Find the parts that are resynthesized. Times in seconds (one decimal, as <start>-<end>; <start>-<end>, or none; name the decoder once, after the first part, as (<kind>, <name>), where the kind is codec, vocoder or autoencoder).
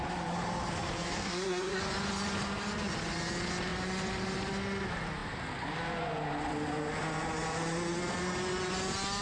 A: 1.2-1.8 (codec, SNAC)